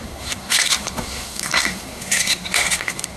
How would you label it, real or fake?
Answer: fake